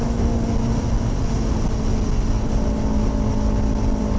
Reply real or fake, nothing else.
real